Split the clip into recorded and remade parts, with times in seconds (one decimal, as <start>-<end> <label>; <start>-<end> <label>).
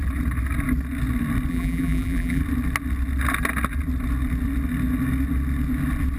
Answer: 0.0-1.5 recorded; 1.5-2.4 remade; 2.4-6.2 recorded